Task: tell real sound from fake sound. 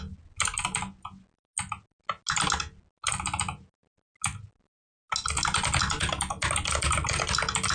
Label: real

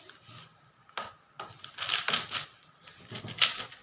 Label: real